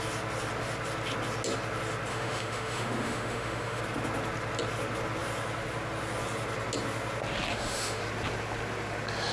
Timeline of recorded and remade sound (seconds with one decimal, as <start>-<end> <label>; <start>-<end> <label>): 0.0-2.1 recorded; 2.1-3.8 remade; 3.8-7.5 recorded; 7.5-8.0 remade; 8.0-9.3 recorded